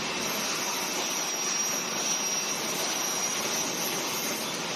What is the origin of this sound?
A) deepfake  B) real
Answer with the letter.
B